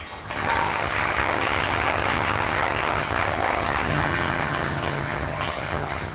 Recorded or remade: remade